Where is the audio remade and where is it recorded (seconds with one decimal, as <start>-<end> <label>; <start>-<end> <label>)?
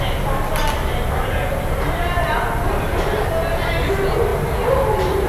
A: 0.0-5.3 recorded